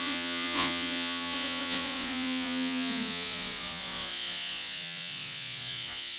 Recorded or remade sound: remade